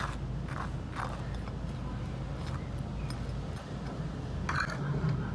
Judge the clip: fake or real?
real